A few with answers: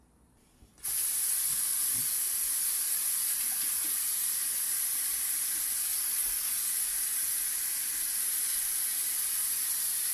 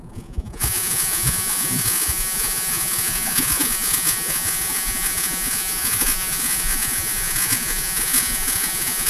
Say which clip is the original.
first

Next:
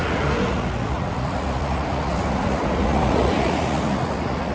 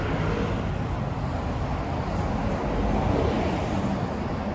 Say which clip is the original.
second